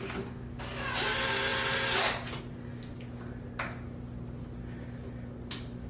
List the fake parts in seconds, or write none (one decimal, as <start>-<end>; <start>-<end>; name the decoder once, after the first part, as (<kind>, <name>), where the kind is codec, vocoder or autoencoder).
none